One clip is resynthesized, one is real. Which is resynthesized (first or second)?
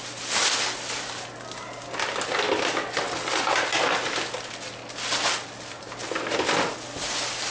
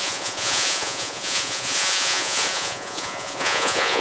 second